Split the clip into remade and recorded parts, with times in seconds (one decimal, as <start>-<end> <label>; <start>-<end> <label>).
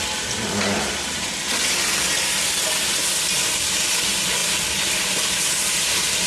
0.0-6.3 recorded